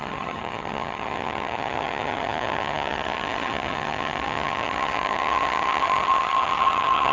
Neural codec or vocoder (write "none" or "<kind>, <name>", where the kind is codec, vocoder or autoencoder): vocoder, HiFi-GAN